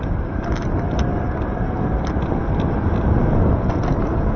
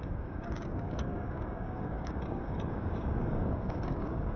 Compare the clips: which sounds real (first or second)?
first